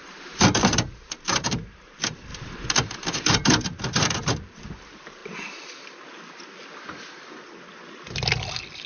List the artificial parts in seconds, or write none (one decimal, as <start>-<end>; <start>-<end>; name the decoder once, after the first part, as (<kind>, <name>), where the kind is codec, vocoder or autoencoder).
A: 0.0-5.2 (vocoder, BigVGAN v2)